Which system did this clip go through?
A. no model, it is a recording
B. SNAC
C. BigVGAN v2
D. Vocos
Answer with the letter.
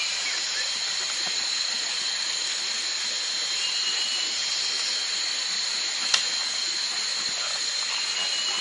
A